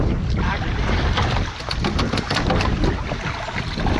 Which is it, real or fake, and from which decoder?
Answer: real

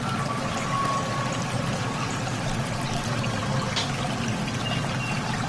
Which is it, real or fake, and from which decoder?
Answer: real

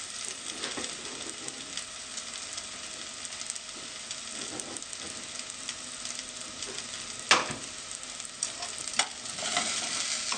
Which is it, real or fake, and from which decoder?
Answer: real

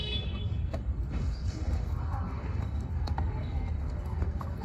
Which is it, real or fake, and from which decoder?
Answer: fake, codec, SNAC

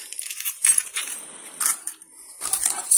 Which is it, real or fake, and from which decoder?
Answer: fake, vocoder, BigVGAN v2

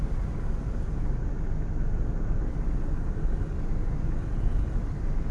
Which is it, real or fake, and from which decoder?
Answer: real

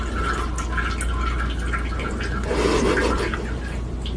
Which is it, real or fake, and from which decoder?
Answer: real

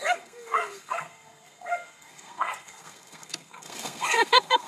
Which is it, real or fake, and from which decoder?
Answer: fake, codec, SNAC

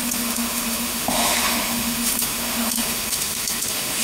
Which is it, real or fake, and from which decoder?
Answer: fake, autoencoder, DAC-VAE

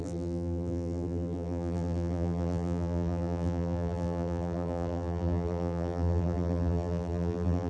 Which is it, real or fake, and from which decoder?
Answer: fake, vocoder, BigVGAN v2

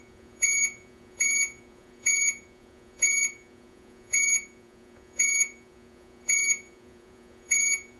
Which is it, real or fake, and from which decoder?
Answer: fake, vocoder, Vocos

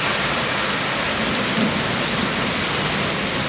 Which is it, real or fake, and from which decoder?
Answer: real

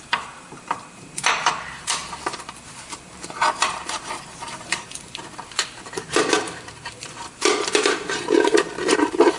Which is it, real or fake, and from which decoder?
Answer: fake, vocoder, BigVGAN v2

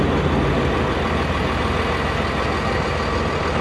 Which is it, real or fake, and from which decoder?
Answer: real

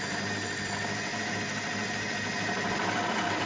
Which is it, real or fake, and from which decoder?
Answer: real